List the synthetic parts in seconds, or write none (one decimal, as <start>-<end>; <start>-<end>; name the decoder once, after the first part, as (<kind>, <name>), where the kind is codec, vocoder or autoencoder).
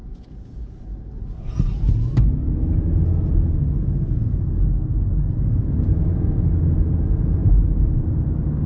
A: 0.0-0.8 (vocoder, Vocos)